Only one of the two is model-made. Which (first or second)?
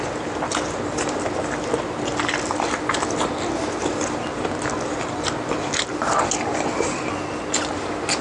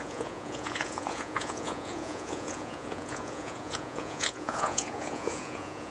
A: second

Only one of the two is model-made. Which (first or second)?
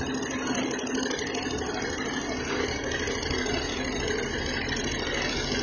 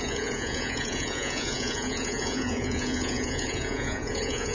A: second